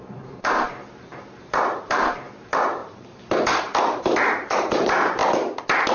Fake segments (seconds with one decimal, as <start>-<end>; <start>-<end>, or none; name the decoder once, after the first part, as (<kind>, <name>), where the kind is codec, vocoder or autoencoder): 0.0-2.8 (vocoder, BigVGAN v2); 4.0-5.2